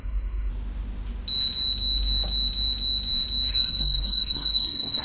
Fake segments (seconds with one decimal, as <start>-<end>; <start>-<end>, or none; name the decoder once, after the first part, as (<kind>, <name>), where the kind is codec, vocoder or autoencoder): 0.0-0.5 (codec, SNAC); 3.5-5.0